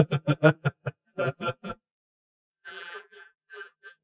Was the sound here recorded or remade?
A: remade